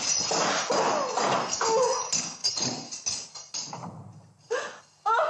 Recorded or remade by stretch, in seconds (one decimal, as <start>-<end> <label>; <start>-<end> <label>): 0.0-5.3 recorded